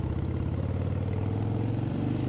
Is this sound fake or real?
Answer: real